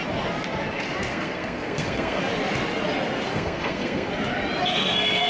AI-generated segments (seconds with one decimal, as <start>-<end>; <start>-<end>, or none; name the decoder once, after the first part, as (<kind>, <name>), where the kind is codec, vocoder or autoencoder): 1.1-2.2 (codec, SNAC); 3.3-4.1; 4.7-5.3